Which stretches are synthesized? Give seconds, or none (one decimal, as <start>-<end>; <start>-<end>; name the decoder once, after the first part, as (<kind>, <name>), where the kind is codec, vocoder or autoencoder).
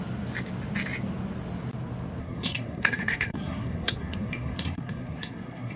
2.2-5.8 (codec, SNAC)